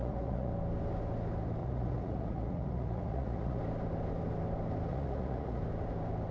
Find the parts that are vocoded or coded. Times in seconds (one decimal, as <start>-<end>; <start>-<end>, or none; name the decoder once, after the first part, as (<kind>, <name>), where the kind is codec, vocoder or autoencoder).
0.0-0.5 (vocoder, Vocos); 1.6-3.6; 4.9-5.6